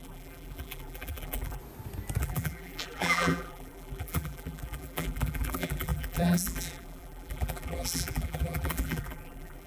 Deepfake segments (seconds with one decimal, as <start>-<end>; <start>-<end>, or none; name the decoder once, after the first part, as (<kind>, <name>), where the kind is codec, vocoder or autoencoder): 0.0-1.6 (vocoder, BigVGAN v2); 2.2-9.7